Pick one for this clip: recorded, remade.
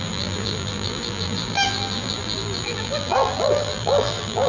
remade